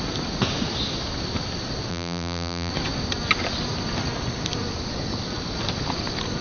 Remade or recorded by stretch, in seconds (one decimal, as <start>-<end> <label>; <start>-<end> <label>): 0.0-1.9 recorded; 1.9-2.7 remade; 2.7-6.4 recorded